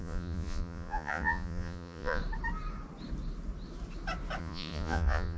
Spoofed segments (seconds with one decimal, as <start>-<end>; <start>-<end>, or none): 0.0-2.2; 4.4-5.4